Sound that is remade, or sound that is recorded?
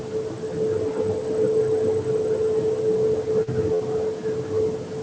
recorded